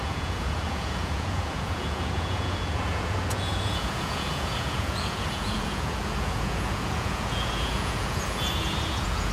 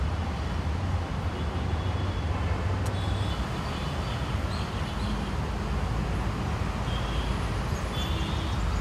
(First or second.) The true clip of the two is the second